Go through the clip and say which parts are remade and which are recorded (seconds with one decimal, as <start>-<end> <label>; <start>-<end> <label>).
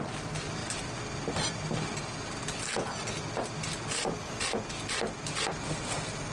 0.0-6.3 recorded